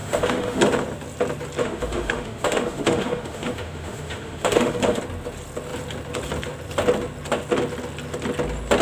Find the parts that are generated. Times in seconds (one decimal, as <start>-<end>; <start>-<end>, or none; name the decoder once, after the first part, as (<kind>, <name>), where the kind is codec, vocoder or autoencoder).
0.0-0.6 (autoencoder, DAC-VAE); 1.6-5.0